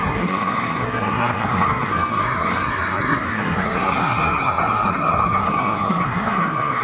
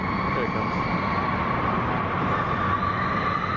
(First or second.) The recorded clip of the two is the second